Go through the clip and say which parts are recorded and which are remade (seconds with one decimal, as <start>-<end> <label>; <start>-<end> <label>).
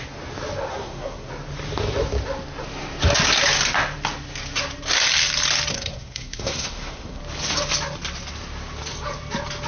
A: 0.0-0.7 recorded; 0.7-1.3 remade; 1.3-5.7 recorded; 5.7-7.2 remade; 7.2-9.7 recorded